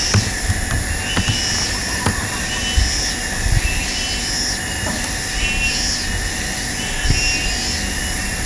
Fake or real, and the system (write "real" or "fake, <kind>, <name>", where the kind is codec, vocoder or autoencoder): real